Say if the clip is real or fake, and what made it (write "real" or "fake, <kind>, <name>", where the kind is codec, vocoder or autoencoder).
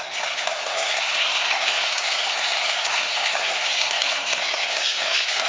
fake, codec, SNAC